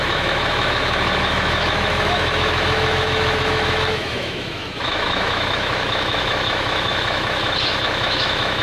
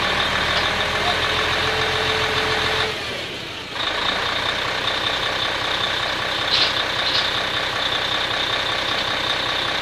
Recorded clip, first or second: second